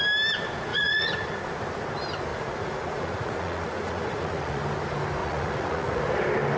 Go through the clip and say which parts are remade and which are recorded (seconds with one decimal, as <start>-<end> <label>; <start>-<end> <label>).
0.0-0.7 recorded; 0.7-1.4 remade; 1.4-2.3 recorded; 2.3-4.6 remade; 4.6-5.2 recorded; 5.2-6.0 remade; 6.0-6.6 recorded